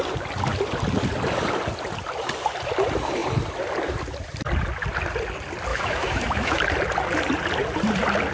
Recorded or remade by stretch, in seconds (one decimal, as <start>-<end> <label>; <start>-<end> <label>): 0.0-5.7 recorded; 5.7-6.6 remade; 6.6-8.3 recorded